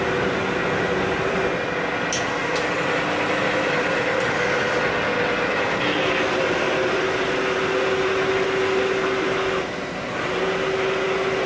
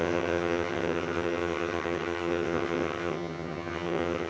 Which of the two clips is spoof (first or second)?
second